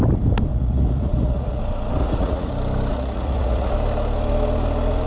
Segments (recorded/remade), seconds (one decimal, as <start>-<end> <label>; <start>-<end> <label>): 0.0-0.5 recorded; 0.5-1.6 remade; 1.6-2.0 recorded; 2.0-2.5 remade; 2.5-2.9 recorded; 2.9-3.7 remade; 3.7-5.1 recorded